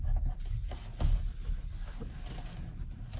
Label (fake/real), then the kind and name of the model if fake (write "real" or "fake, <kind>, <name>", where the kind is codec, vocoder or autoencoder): real